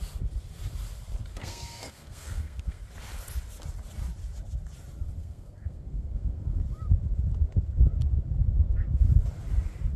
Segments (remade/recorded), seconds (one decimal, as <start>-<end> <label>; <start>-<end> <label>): 0.0-1.3 recorded; 1.3-2.8 remade; 2.8-5.2 recorded; 5.2-6.6 remade; 6.6-10.0 recorded